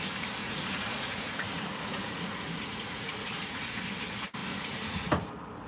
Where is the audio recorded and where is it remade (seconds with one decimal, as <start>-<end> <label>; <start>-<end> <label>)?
0.0-0.4 recorded; 0.4-3.8 remade; 3.8-4.4 recorded; 4.4-5.1 remade; 5.1-5.7 recorded